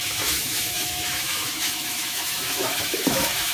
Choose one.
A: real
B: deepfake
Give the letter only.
B